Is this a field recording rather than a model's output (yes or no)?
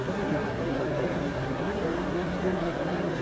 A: no